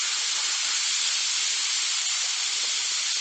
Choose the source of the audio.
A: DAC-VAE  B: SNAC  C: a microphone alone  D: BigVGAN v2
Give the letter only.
D